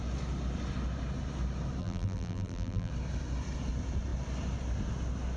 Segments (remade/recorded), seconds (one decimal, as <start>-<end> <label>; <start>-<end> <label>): 0.0-1.8 recorded; 1.8-2.9 remade; 2.9-5.4 recorded